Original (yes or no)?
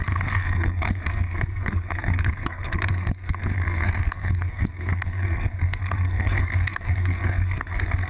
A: no